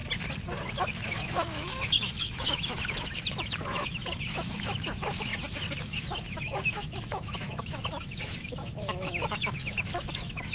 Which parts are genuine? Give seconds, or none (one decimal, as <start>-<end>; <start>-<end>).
0.0-0.6; 5.3-5.8